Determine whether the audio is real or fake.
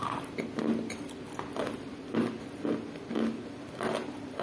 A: real